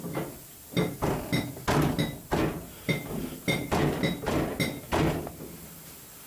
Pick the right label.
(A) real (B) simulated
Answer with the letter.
A